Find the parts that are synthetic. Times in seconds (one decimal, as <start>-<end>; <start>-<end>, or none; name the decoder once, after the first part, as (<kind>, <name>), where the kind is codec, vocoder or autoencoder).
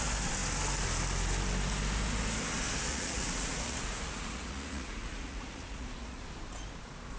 2.9-6.2 (vocoder, Vocos)